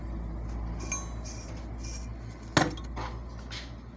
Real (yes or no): yes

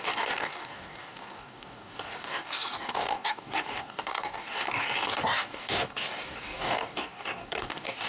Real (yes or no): no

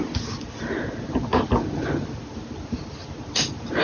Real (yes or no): yes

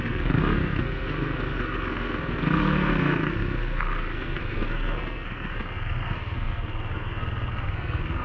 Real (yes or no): no